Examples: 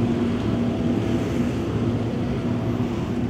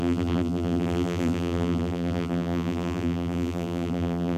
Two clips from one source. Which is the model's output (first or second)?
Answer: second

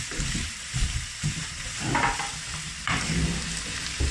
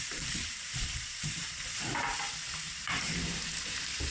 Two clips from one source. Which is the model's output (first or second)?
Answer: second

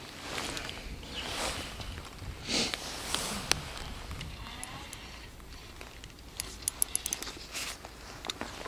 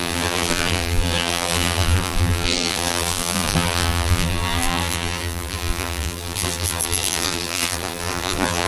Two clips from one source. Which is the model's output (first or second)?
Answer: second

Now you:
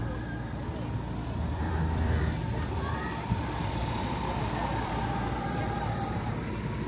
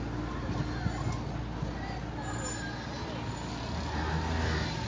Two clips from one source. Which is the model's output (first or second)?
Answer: first